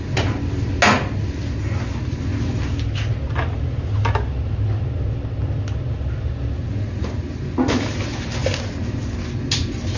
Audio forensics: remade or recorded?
recorded